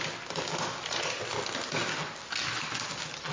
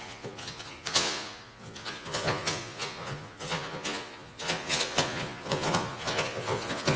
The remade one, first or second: second